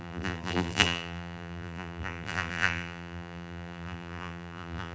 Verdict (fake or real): fake